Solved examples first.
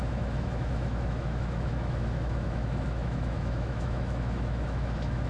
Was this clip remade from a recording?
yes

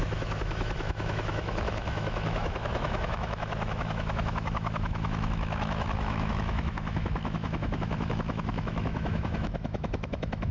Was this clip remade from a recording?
yes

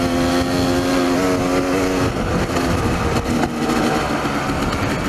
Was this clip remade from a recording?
no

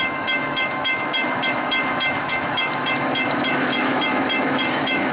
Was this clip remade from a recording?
yes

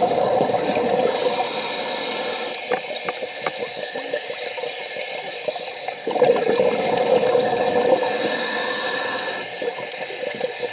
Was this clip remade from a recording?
no